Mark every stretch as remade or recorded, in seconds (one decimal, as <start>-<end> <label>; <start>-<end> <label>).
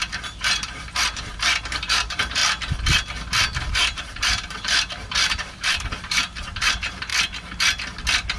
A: 0.0-2.4 remade; 2.4-3.7 recorded; 3.7-7.1 remade; 7.1-8.4 recorded